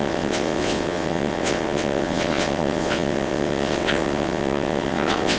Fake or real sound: fake